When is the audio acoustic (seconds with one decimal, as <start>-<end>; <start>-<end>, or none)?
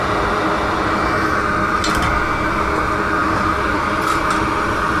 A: 0.0-3.2; 4.2-5.0